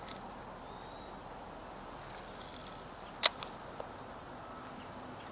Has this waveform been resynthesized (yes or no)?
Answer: no